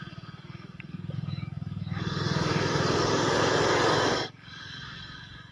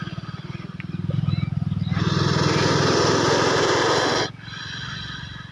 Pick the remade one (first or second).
first